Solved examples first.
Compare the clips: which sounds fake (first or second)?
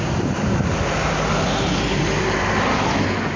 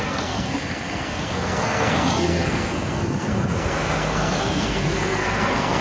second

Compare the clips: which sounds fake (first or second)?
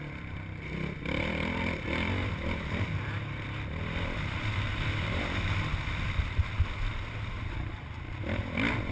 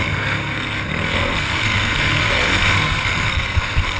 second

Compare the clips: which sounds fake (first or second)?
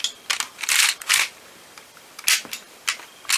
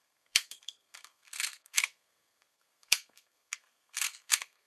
second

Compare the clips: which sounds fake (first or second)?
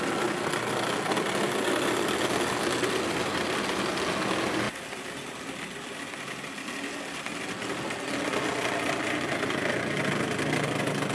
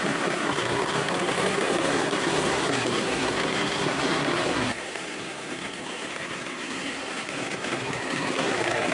second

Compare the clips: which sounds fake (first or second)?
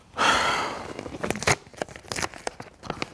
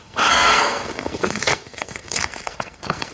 second